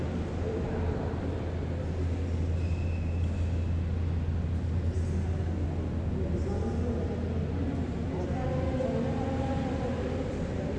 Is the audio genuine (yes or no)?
yes